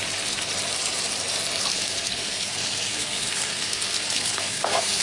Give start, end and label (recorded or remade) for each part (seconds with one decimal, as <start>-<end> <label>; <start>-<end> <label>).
0.0-1.7 recorded; 1.7-5.0 remade